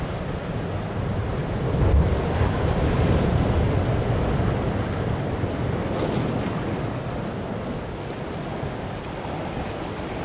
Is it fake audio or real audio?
real